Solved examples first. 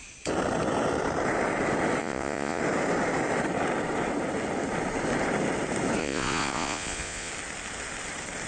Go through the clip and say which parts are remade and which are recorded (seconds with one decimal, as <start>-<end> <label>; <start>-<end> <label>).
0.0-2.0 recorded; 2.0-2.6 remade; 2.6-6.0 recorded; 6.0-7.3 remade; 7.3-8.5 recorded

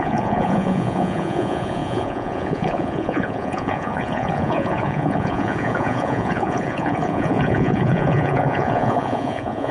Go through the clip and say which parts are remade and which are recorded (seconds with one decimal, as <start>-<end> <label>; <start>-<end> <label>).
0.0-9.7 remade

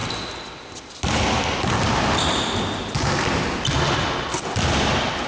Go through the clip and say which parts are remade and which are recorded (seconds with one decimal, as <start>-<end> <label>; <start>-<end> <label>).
0.0-5.3 recorded

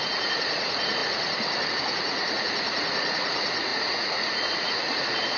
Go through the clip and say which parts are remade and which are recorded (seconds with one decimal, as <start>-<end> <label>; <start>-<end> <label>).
0.0-1.0 remade; 1.0-1.7 recorded; 1.7-5.4 remade